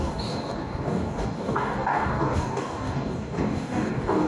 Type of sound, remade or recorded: remade